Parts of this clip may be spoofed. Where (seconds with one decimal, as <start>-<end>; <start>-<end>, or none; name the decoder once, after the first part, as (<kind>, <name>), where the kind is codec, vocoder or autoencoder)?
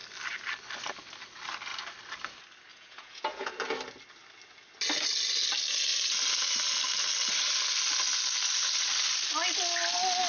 2.7-3.5 (vocoder, Vocos)